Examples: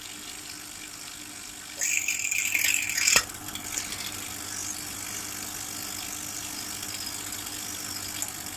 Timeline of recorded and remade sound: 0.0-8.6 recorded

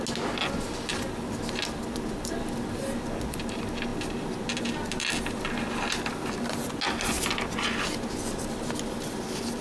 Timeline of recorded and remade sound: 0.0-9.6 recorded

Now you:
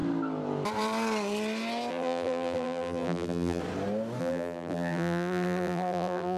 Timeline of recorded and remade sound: 0.0-1.9 recorded; 1.9-3.6 remade; 3.6-4.2 recorded; 4.2-6.4 remade

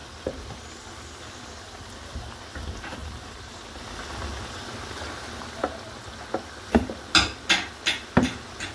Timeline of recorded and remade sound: 0.0-1.3 remade; 1.3-3.0 recorded; 3.0-3.5 remade; 3.5-8.7 recorded

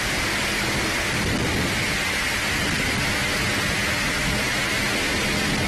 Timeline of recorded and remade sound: 0.0-1.4 recorded; 1.4-2.5 remade; 2.5-5.7 recorded

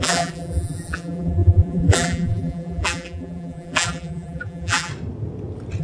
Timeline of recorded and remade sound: 0.0-4.9 remade; 4.9-5.8 recorded

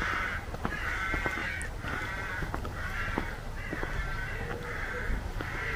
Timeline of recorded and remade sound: 0.0-5.8 recorded

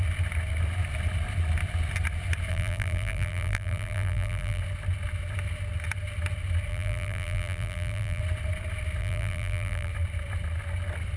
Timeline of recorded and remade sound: 0.0-2.5 recorded; 2.5-4.6 remade; 4.6-6.7 recorded; 6.7-8.2 remade; 8.2-9.0 recorded; 9.0-9.9 remade; 9.9-11.2 recorded